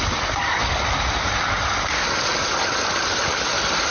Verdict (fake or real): real